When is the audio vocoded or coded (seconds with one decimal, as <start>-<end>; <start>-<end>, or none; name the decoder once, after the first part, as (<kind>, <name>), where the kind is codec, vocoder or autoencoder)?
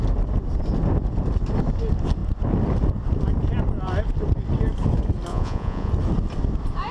5.3-5.9 (vocoder, Vocos)